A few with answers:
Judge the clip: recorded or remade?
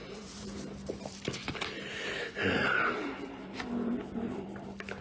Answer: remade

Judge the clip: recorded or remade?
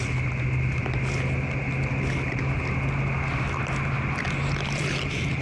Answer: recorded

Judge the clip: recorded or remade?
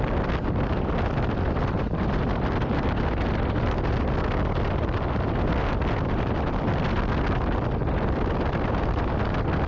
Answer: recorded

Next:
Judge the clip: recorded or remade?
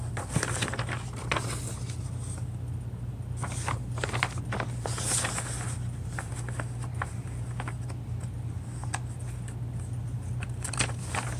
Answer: recorded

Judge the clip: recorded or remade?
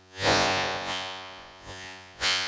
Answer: remade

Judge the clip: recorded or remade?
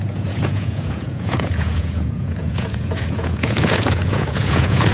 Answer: remade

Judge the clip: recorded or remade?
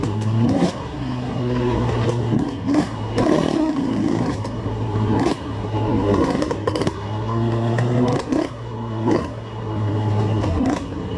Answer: remade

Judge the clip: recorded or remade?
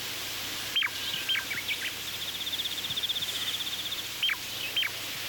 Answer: recorded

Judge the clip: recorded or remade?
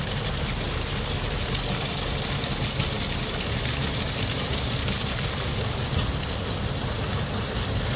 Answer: recorded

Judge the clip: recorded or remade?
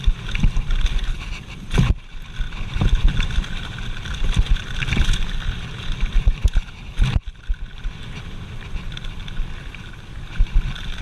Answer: recorded